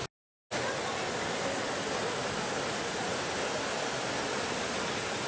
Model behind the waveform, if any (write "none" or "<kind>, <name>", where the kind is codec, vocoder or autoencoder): none